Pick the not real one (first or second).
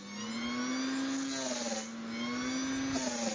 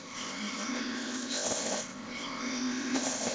second